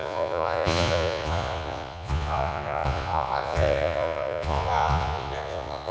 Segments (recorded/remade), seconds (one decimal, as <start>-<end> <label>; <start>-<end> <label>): 0.0-5.9 remade